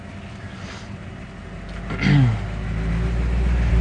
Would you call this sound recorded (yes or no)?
yes